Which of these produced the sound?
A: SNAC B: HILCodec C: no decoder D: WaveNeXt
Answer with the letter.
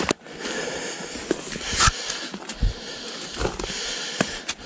C